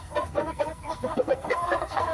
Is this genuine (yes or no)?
no